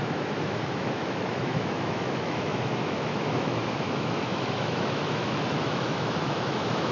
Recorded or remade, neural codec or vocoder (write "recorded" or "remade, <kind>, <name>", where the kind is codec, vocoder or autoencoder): remade, autoencoder, DAC-VAE